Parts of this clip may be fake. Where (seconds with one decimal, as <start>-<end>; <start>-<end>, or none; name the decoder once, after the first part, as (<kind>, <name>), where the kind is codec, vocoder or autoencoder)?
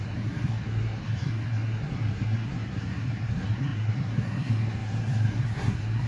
0.0-6.1 (codec, SNAC)